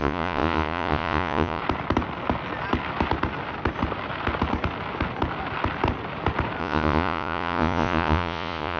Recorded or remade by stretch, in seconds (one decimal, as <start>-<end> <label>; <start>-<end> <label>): 0.0-1.6 remade; 1.6-6.6 recorded; 6.6-8.8 remade